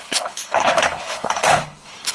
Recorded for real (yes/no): no